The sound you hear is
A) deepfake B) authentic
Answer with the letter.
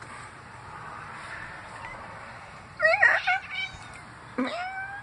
B